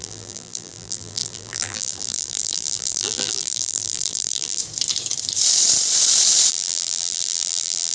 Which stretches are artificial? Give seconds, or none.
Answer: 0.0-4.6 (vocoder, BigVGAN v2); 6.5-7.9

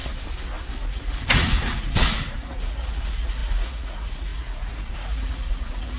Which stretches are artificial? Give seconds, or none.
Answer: 0.9-6.0 (vocoder, Vocos)

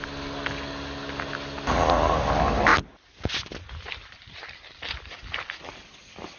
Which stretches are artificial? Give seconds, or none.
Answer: none

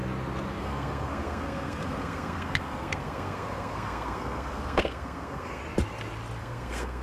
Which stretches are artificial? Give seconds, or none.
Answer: 0.6-5.6 (codec, SNAC); 6.4-7.0